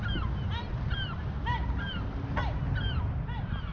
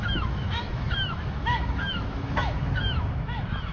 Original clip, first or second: first